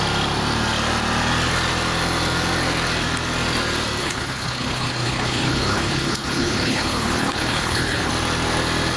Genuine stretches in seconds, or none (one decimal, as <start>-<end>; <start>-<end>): 0.0-4.0; 8.1-9.0